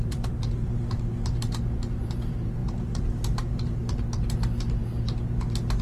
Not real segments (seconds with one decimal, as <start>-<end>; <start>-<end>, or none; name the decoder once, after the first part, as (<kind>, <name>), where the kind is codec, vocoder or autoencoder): 0.0-3.8 (vocoder, BigVGAN v2)